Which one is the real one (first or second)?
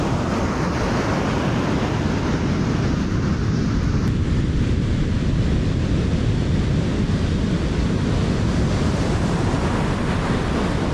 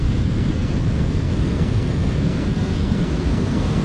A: first